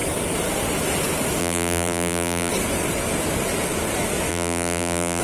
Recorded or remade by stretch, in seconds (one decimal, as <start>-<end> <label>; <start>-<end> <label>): 0.0-1.4 recorded; 1.4-2.5 remade; 2.5-4.3 recorded; 4.3-5.2 remade